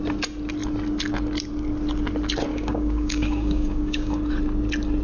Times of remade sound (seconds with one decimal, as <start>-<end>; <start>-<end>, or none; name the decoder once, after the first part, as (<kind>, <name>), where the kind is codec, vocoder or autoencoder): 2.5-4.2 (codec, DAC)